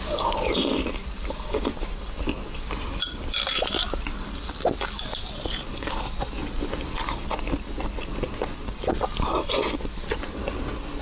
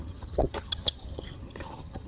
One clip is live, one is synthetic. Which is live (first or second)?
first